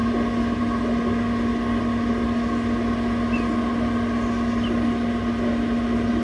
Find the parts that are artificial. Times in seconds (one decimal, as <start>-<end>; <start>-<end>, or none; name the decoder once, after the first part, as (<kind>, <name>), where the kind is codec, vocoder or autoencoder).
none